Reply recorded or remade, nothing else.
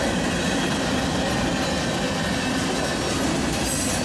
recorded